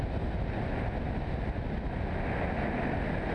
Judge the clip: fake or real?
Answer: real